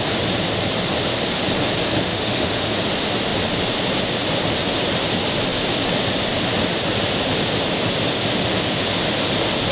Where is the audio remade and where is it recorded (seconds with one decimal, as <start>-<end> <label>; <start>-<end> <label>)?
0.0-1.8 recorded; 1.8-2.7 remade; 2.7-9.7 recorded